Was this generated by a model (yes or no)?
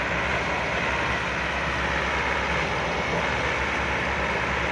no